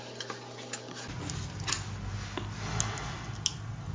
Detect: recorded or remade recorded